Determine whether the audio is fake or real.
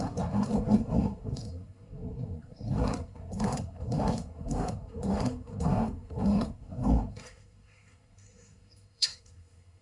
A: fake